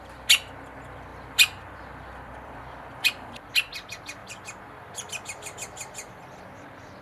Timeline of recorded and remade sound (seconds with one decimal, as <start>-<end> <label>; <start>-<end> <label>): 0.0-1.1 recorded; 1.1-3.5 remade; 3.5-4.2 recorded; 4.2-6.3 remade; 6.3-7.0 recorded